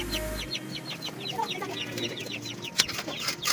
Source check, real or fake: real